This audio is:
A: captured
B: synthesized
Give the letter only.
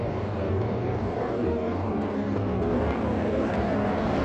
B